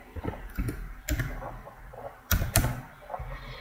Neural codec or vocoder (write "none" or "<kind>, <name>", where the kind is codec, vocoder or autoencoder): vocoder, BigVGAN v2